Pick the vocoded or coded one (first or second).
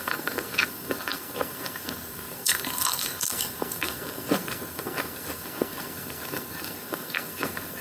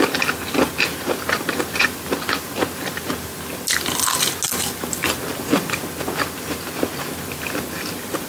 first